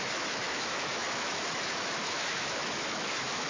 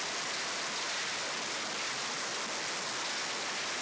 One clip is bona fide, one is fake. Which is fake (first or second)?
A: first